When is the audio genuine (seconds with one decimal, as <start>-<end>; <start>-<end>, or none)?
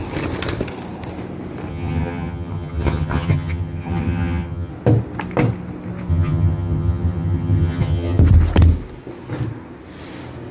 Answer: 0.0-1.7; 4.7-6.1; 8.2-10.5